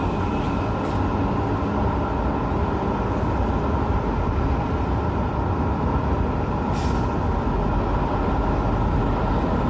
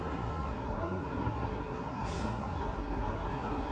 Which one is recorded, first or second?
first